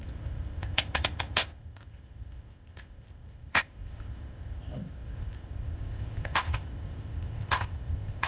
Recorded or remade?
remade